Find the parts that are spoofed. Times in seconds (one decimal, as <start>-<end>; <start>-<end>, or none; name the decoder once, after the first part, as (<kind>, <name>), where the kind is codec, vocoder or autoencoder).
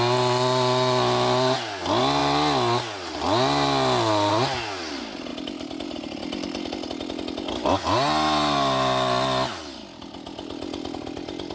none